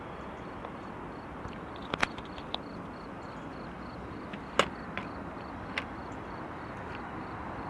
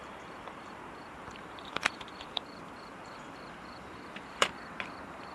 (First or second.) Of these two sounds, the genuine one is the first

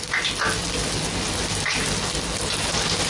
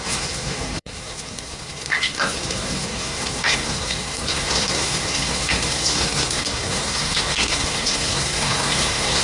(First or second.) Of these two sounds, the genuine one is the first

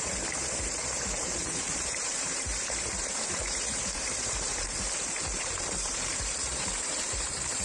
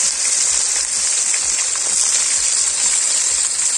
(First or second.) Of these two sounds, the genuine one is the second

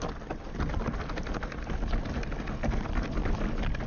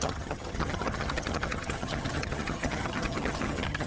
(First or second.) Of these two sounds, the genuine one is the first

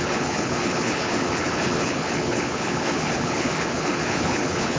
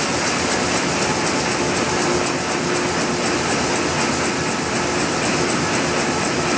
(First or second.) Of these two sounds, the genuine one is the second